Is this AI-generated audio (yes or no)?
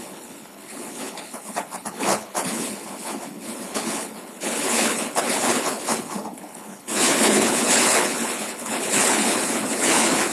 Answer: yes